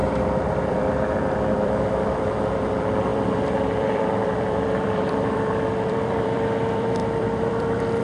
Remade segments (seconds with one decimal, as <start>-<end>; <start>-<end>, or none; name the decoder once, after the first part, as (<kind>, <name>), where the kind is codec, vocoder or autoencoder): 0.0-8.0 (vocoder, BigVGAN v2)